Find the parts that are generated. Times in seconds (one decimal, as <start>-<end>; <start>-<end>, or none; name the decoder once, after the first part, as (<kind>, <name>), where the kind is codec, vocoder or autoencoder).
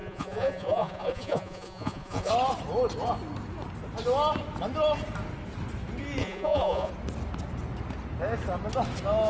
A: 0.0-2.3 (vocoder, Vocos); 6.2-6.9